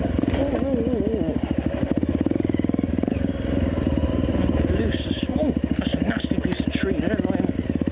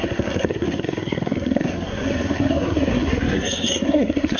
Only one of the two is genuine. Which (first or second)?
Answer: first